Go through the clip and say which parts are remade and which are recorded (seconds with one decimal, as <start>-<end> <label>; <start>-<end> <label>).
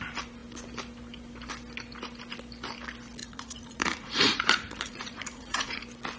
0.0-3.2 recorded; 3.2-5.8 remade; 5.8-6.2 recorded